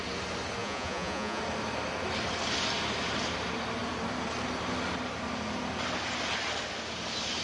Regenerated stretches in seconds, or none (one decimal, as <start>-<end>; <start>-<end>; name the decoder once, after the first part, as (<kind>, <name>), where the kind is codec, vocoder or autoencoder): 0.6-1.4 (vocoder, Vocos)